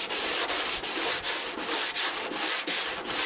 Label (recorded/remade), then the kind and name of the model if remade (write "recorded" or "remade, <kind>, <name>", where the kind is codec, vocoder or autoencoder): recorded